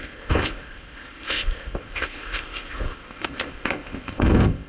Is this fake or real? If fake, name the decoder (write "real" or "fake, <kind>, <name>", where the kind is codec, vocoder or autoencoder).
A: fake, codec, ZipCodec